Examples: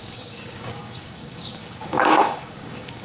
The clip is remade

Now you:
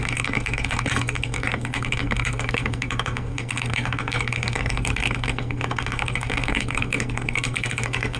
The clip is remade